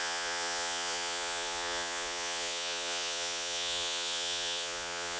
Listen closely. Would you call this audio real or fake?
fake